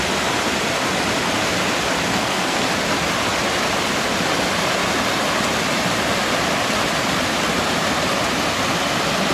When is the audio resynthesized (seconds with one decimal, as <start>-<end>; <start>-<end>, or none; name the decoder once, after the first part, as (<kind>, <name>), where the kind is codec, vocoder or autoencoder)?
2.1-2.7 (codec, SNAC)